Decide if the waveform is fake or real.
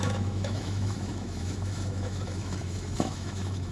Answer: fake